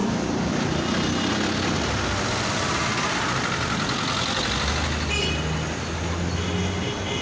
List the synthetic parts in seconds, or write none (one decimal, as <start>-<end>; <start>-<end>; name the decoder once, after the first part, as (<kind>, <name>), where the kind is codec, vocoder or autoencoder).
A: none